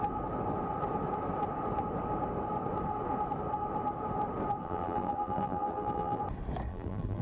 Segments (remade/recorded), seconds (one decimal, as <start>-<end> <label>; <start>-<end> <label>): 0.0-4.6 recorded; 4.6-6.2 remade; 6.2-6.7 recorded; 6.7-7.2 remade